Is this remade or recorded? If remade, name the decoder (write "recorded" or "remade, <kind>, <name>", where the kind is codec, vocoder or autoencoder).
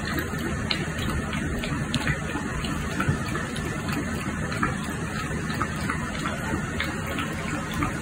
recorded